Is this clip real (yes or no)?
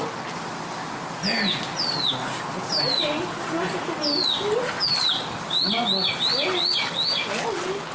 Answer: yes